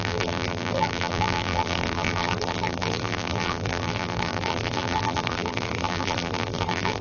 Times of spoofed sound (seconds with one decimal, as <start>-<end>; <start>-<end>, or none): 0.0-7.0